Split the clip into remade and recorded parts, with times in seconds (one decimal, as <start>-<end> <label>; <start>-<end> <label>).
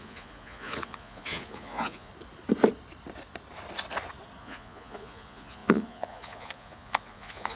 0.0-2.1 remade; 2.1-4.4 recorded; 4.4-7.6 remade